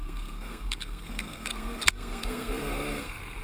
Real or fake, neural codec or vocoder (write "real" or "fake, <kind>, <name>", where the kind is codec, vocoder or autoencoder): fake, codec, SNAC